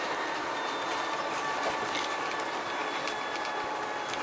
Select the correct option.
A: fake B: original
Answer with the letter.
B